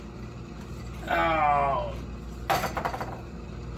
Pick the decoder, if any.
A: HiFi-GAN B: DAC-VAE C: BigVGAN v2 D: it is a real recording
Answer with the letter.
D